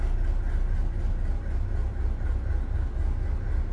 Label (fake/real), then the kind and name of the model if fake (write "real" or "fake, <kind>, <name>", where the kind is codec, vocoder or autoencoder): real